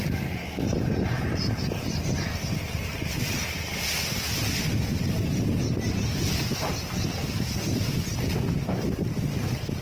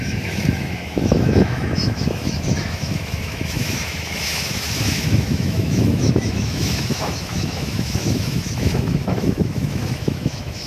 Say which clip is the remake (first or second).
second